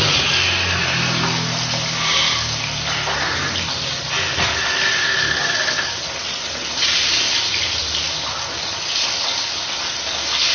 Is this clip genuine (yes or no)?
yes